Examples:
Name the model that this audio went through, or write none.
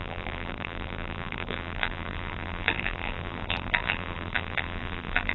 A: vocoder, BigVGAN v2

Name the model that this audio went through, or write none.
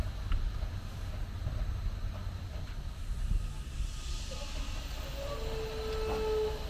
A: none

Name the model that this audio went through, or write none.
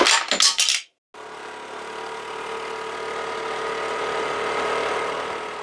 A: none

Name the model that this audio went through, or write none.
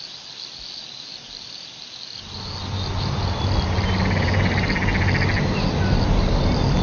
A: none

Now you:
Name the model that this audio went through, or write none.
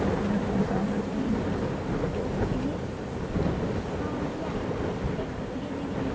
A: none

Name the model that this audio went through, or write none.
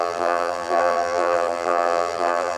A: vocoder, BigVGAN v2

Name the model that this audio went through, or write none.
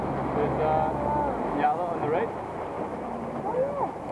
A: none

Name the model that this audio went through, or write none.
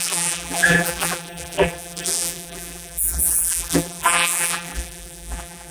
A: vocoder, BigVGAN v2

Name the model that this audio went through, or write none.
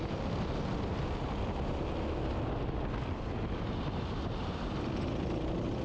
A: none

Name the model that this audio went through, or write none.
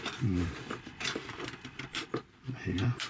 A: vocoder, BigVGAN v2